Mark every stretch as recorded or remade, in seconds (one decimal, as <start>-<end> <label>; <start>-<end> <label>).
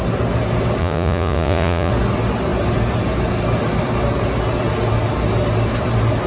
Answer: 0.0-0.8 recorded; 0.8-1.9 remade; 1.9-6.3 recorded